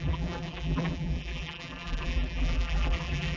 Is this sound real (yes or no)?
no